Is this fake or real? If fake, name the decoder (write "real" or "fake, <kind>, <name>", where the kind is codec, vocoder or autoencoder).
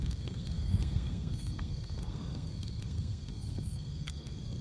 fake, codec, SNAC